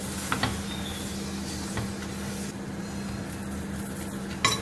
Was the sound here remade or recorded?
recorded